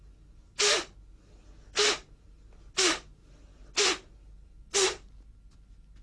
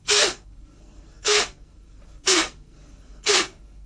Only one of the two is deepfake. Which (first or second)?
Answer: second